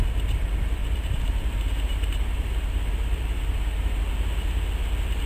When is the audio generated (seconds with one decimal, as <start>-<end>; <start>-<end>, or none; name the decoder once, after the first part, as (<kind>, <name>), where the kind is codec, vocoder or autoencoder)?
0.8-4.0 (vocoder, BigVGAN v2)